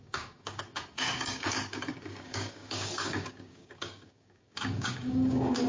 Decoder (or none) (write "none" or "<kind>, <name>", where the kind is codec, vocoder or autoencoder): codec, DAC